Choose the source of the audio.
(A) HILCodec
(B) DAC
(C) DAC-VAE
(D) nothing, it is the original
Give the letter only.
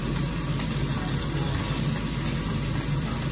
D